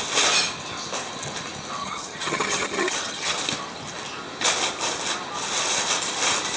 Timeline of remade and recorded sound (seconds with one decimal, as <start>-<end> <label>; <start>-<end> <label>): 0.0-1.8 recorded; 1.8-3.4 remade; 3.4-6.6 recorded